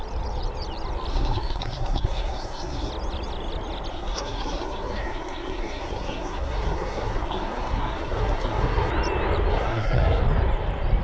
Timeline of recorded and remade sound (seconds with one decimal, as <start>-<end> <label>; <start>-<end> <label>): 0.0-1.1 recorded; 1.1-2.9 remade; 2.9-3.9 recorded; 3.9-8.9 remade; 8.9-9.5 recorded; 9.5-10.2 remade; 10.2-11.0 recorded